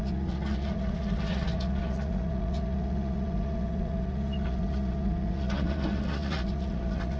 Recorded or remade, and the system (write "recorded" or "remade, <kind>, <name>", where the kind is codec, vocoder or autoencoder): remade, vocoder, Vocos